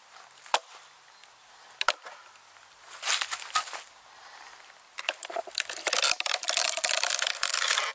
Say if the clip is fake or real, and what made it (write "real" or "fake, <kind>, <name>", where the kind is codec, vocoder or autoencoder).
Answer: real